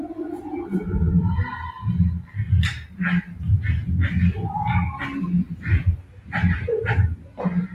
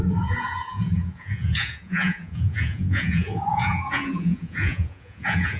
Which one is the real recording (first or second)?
first